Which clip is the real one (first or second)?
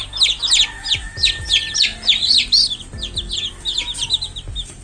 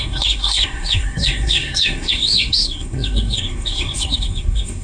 first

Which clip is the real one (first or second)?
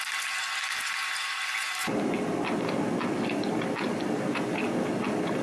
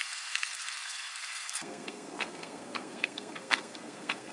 first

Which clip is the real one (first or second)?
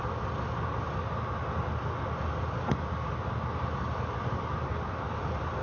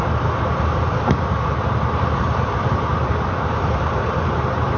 first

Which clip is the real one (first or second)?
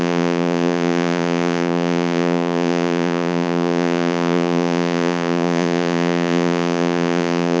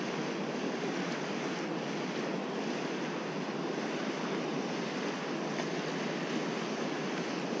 second